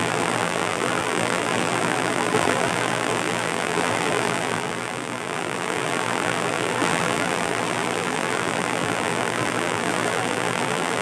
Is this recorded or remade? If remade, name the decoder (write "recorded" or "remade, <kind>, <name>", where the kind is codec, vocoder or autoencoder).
remade, vocoder, BigVGAN v2